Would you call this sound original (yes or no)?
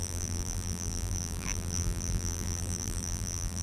no